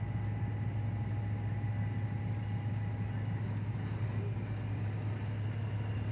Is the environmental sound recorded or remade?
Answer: recorded